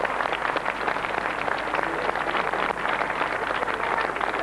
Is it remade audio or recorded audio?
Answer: recorded